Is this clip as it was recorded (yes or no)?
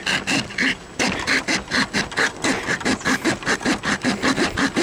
yes